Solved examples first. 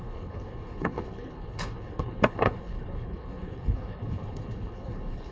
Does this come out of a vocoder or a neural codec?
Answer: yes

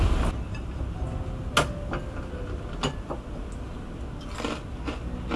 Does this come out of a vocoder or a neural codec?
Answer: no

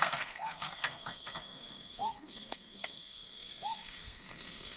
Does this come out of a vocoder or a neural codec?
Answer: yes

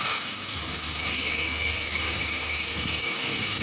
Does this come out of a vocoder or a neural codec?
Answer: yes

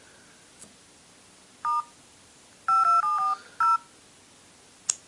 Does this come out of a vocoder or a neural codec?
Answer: no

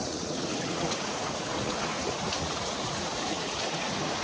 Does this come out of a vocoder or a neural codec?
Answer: yes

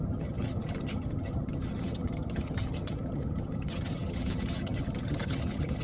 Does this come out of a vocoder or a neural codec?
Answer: yes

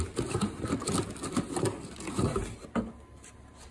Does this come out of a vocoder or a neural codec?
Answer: no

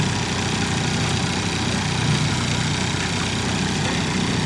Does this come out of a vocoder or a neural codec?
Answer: no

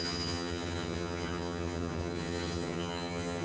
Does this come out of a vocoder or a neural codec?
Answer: yes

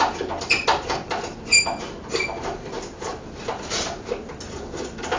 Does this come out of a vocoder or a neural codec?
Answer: no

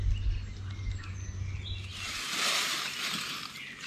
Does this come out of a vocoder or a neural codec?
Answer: no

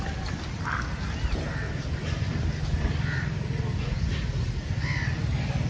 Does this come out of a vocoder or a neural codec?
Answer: no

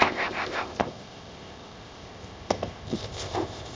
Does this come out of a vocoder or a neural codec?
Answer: yes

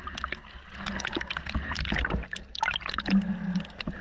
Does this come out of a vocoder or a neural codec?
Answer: no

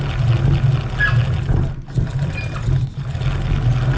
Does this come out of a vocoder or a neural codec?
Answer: no